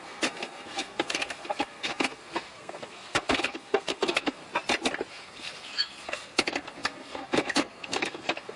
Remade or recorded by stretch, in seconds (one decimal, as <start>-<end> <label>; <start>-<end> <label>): 0.0-4.4 remade; 4.4-5.1 recorded; 5.1-8.6 remade